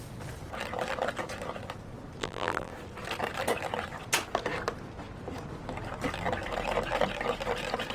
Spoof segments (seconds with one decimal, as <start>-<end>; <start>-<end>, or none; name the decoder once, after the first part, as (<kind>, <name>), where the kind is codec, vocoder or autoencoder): 2.2-2.7 (vocoder, BigVGAN v2)